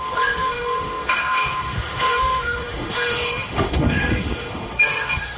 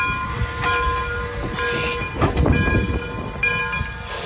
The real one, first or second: second